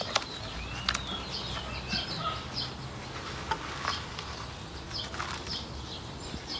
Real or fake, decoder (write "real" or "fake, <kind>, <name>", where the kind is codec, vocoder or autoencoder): real